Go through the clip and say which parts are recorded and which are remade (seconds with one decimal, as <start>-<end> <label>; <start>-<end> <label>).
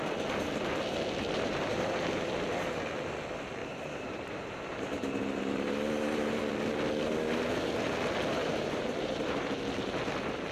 0.0-1.7 recorded; 1.7-2.3 remade; 2.3-3.6 recorded; 3.6-6.4 remade; 6.4-8.4 recorded; 8.4-9.5 remade; 9.5-10.5 recorded